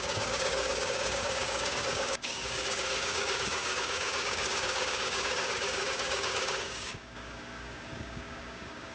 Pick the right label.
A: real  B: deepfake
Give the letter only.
B